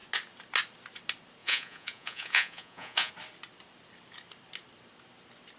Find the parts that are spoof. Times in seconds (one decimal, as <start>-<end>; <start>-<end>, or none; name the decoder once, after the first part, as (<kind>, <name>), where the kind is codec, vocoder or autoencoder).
1.4-3.1 (vocoder, Vocos)